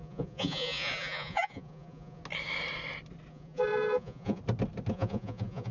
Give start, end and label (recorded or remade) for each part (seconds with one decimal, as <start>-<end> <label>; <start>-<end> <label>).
0.0-2.2 remade; 2.2-3.3 recorded; 3.3-4.4 remade; 4.4-4.9 recorded; 4.9-5.7 remade

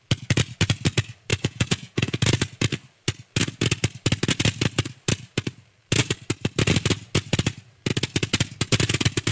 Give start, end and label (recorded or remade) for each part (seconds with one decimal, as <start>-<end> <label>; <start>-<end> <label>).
0.0-1.3 recorded; 1.3-2.2 remade; 2.2-9.3 recorded

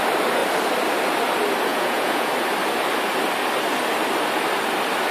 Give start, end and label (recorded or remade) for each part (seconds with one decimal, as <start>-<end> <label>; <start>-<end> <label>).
0.0-1.7 recorded; 1.7-2.3 remade; 2.3-5.1 recorded

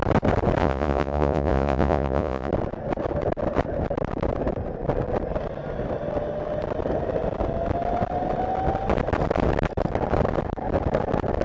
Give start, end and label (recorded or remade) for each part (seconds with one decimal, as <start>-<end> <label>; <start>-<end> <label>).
0.0-0.6 recorded; 0.6-2.5 remade; 2.5-11.4 recorded

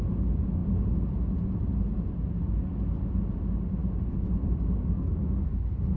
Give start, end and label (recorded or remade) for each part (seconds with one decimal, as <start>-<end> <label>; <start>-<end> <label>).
0.0-6.0 recorded

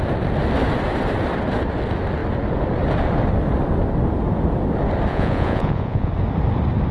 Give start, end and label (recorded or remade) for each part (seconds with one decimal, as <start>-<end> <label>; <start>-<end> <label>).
0.0-5.1 recorded; 5.1-6.1 remade; 6.1-6.9 recorded

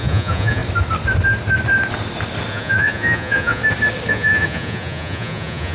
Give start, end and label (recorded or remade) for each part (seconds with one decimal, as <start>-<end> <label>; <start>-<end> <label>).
0.0-0.6 remade; 0.6-2.5 recorded; 2.5-3.6 remade; 3.6-4.1 recorded; 4.1-5.7 remade